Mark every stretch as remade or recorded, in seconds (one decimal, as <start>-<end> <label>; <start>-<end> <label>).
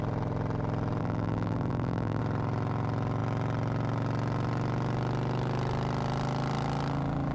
0.0-1.0 recorded; 1.0-2.2 remade; 2.2-7.3 recorded